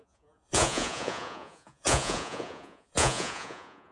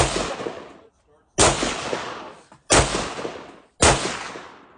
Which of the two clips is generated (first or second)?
first